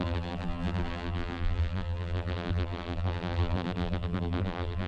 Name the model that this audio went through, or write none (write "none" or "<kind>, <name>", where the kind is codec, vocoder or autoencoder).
vocoder, BigVGAN v2